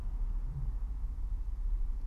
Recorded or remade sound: recorded